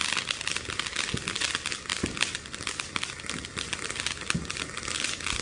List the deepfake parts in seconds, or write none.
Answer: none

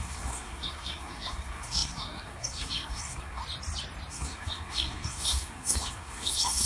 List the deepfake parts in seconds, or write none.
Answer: 0.0-3.4 (codec, SNAC); 4.1-6.7

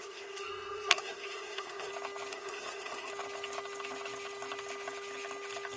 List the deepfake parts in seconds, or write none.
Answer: 0.0-1.9 (codec, SNAC); 2.3-3.1

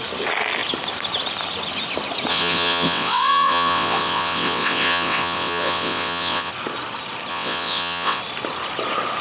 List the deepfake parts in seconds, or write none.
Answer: 2.3-6.5 (vocoder, WaveNeXt); 7.3-8.2